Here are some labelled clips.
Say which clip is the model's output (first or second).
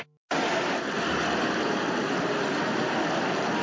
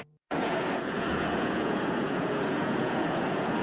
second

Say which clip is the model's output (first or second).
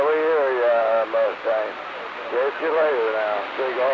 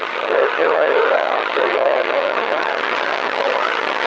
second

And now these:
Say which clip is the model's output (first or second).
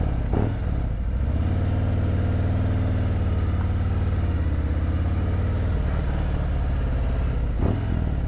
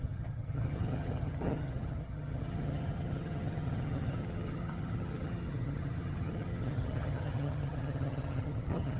second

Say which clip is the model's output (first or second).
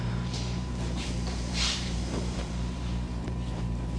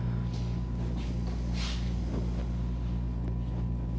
first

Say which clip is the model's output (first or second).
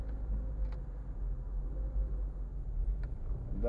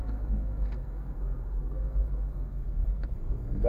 second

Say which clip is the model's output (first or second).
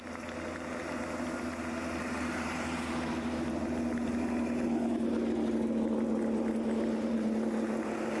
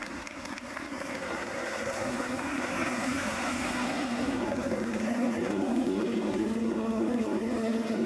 second